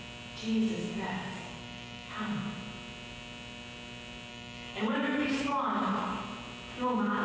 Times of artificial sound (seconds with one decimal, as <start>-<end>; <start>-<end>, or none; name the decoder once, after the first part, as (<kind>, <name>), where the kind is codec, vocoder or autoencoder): 0.9-2.1 (codec, DAC); 4.3-6.2